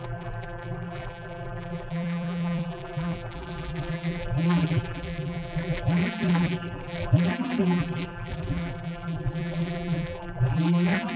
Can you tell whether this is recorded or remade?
remade